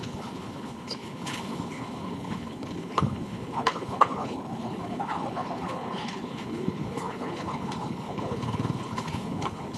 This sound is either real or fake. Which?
fake